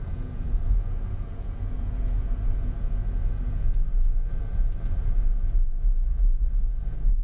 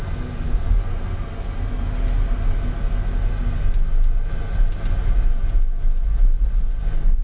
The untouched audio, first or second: second